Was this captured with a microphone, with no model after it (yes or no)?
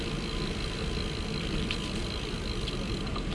yes